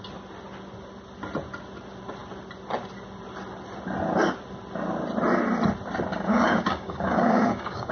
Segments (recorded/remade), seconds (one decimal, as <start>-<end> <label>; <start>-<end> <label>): 0.0-6.1 recorded; 6.1-7.9 remade